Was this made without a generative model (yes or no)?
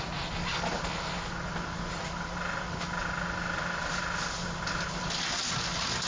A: yes